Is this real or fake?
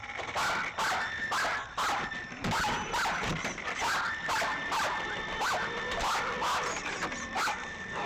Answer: real